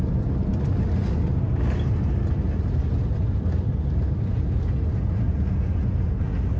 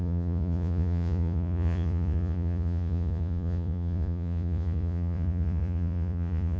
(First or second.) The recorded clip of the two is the first